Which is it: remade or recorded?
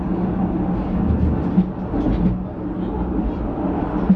recorded